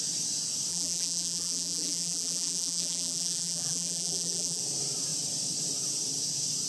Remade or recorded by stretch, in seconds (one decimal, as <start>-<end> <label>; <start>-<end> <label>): 0.0-0.7 recorded; 0.7-4.6 remade; 4.6-6.7 recorded